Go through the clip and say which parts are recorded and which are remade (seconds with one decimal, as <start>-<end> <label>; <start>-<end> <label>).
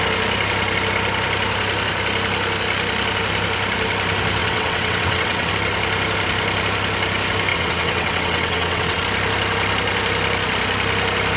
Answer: 0.0-4.4 recorded; 4.4-5.5 remade; 5.5-7.5 recorded; 7.5-9.0 remade; 9.0-11.4 recorded